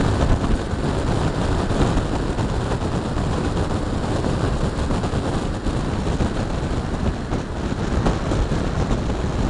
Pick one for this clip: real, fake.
real